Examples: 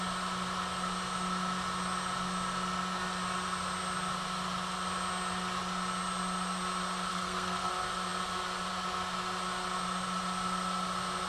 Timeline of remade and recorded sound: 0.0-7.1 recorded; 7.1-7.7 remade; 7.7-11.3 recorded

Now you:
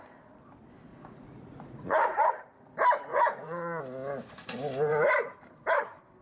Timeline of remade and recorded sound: 0.0-0.9 recorded; 0.9-2.3 remade; 2.3-3.1 recorded; 3.1-3.8 remade; 3.8-6.2 recorded